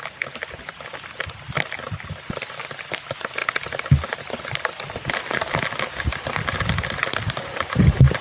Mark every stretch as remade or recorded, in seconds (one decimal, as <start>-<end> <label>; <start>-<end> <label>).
0.0-8.2 recorded